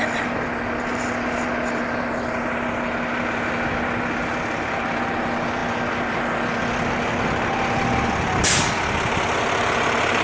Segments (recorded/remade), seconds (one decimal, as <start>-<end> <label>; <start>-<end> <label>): 0.0-10.2 recorded